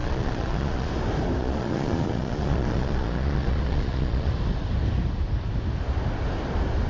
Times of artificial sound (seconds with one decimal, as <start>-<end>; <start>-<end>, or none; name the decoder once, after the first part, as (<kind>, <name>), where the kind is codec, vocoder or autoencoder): 0.0-0.9 (vocoder, Vocos); 1.4-4.3